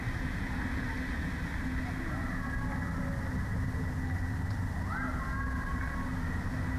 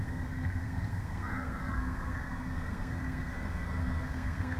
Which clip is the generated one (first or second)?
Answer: second